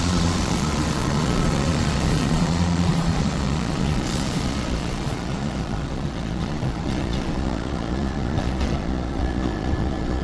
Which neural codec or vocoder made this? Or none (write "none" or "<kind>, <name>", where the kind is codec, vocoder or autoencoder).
vocoder, Vocos